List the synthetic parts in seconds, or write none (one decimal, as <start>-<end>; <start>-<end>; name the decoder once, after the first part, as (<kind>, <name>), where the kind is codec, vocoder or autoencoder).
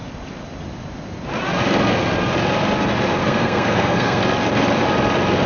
3.2-4.2 (codec, SNAC)